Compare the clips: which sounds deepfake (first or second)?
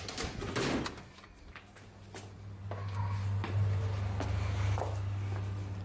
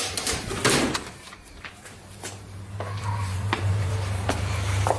second